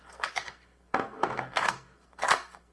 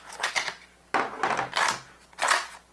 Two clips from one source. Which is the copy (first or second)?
first